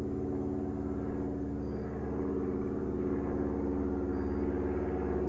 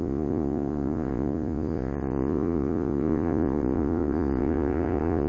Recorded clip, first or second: first